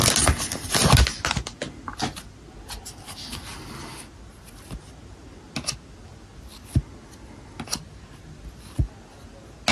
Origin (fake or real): real